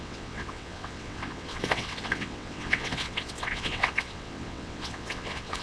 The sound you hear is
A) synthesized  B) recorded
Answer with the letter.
A